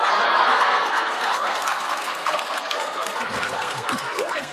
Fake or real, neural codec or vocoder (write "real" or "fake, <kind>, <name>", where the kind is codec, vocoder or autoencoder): fake, codec, SNAC